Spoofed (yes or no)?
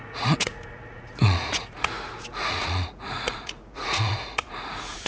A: yes